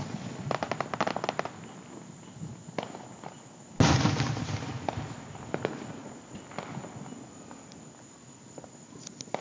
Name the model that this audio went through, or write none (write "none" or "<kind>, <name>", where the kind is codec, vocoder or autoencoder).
none